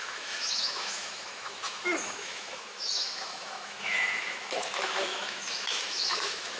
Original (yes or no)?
no